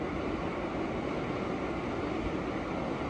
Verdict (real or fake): real